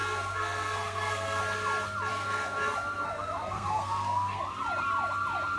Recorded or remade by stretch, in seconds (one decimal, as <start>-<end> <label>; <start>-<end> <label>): 0.0-1.4 remade; 1.4-2.1 recorded; 2.1-4.4 remade; 4.4-5.6 recorded